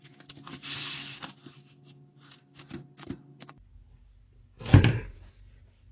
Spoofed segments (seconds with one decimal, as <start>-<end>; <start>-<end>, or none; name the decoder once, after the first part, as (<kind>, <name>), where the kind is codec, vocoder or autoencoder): 4.7-5.3 (vocoder, BigVGAN v2)